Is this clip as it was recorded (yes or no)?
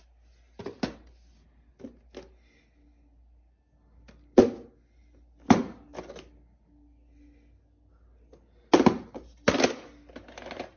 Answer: yes